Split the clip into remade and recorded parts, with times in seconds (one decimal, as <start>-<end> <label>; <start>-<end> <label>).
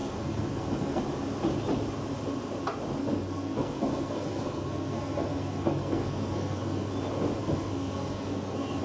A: 0.0-1.0 remade; 1.0-3.0 recorded; 3.0-6.9 remade; 6.9-7.4 recorded; 7.4-8.8 remade